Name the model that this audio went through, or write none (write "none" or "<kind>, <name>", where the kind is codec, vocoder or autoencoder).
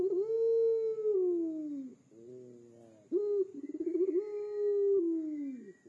none